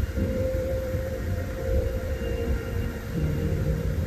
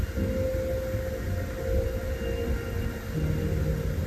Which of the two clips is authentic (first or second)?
second